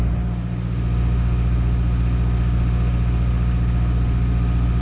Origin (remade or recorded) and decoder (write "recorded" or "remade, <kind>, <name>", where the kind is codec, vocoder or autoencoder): recorded